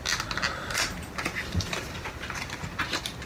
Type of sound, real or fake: real